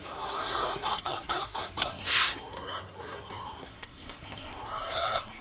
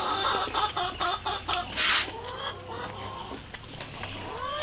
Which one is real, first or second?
second